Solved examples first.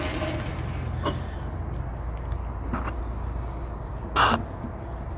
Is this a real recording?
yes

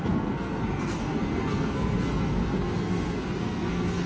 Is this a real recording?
no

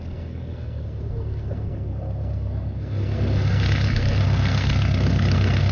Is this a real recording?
no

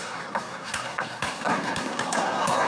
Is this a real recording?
no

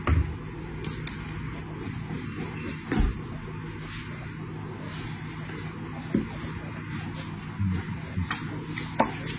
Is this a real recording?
yes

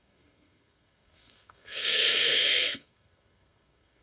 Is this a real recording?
no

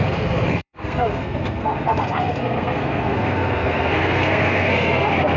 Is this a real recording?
no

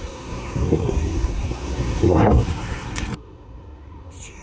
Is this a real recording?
no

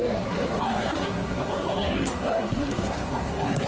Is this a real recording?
no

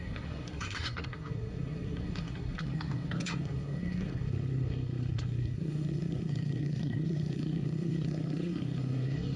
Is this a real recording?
no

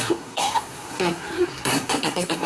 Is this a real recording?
no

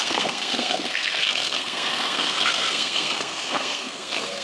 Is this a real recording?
no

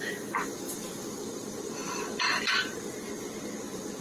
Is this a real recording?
yes